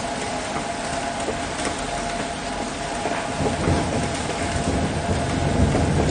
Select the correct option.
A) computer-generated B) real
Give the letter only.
B